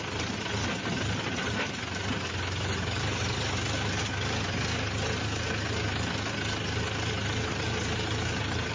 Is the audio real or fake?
real